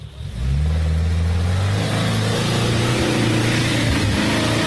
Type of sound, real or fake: real